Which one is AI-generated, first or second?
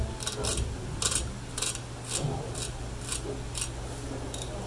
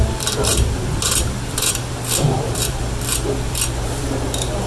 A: second